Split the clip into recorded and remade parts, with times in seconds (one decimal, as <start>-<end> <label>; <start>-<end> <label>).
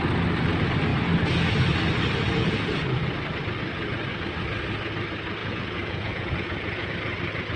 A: 0.0-2.4 recorded; 2.4-3.0 remade; 3.0-5.4 recorded; 5.4-6.9 remade; 6.9-7.6 recorded